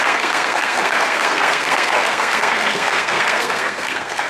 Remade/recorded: remade